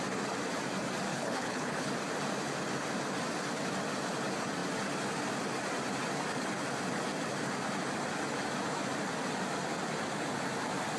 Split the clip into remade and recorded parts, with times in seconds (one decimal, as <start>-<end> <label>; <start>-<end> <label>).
0.0-1.1 recorded; 1.1-1.9 remade; 1.9-11.0 recorded